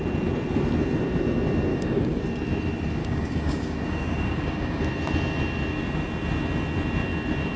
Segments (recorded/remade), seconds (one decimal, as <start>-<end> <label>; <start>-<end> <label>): 0.0-1.7 recorded; 1.7-2.2 remade; 2.2-3.0 recorded; 3.0-4.8 remade; 4.8-7.6 recorded